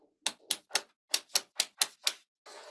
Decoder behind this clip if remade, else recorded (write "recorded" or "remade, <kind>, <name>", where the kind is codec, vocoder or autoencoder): recorded